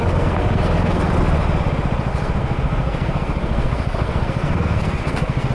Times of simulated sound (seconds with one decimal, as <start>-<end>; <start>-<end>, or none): 0.0-1.1; 2.1-5.5